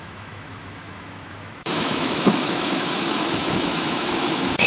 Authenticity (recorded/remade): remade